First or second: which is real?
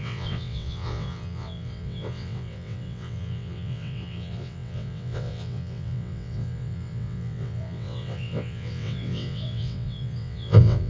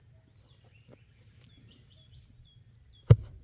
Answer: second